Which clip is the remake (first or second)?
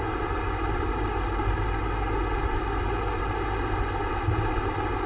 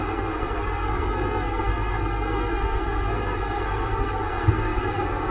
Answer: second